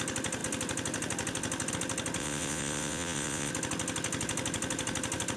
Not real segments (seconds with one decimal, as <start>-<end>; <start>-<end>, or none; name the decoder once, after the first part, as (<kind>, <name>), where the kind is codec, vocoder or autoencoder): 2.2-3.5 (vocoder, WaveNeXt)